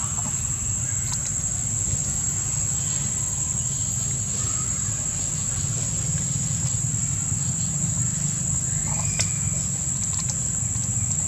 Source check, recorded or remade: recorded